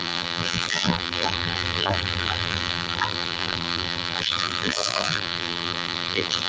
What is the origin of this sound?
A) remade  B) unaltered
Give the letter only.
A